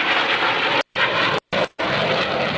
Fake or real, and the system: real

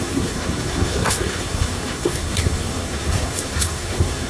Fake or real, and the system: fake, codec, SNAC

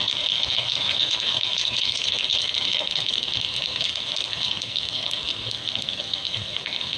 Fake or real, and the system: fake, codec, SNAC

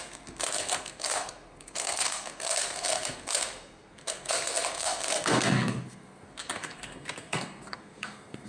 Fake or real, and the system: fake, codec, SNAC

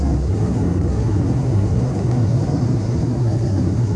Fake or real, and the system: fake, codec, SNAC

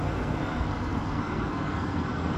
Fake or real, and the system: fake, codec, SNAC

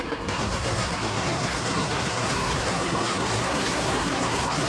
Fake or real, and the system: fake, codec, SNAC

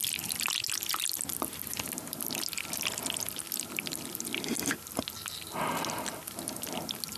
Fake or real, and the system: real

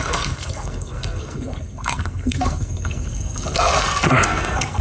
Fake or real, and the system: fake, codec, SNAC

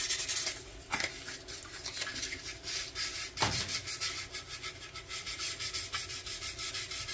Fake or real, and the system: real